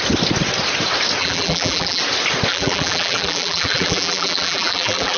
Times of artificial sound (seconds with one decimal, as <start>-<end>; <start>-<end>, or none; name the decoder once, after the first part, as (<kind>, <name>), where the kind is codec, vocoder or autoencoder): 1.2-2.0 (vocoder, BigVGAN v2); 2.5-5.2